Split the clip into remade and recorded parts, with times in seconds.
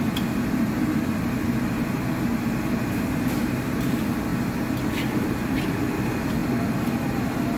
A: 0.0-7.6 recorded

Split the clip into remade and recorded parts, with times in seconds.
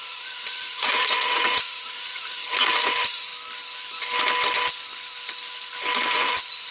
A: 0.0-3.3 remade; 3.3-6.1 recorded; 6.1-6.7 remade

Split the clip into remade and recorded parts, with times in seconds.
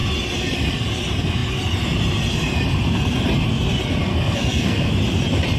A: 0.0-4.1 recorded; 4.1-4.9 remade; 4.9-5.6 recorded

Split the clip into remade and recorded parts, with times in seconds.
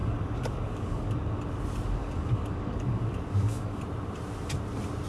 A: 0.0-1.4 remade; 1.4-2.0 recorded; 2.0-3.8 remade; 3.8-5.1 recorded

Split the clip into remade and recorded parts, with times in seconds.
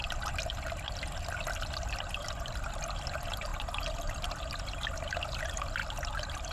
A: 0.0-6.5 recorded